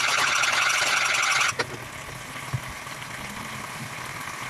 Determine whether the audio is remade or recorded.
recorded